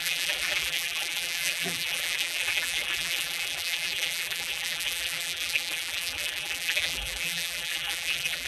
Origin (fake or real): fake